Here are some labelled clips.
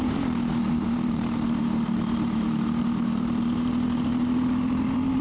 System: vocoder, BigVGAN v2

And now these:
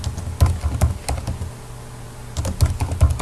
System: none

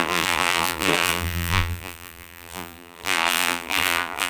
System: vocoder, BigVGAN v2